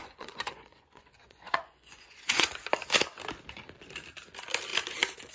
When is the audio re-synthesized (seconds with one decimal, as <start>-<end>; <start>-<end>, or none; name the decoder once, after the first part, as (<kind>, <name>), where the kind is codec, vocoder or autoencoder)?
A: 0.0-2.5 (vocoder, Vocos)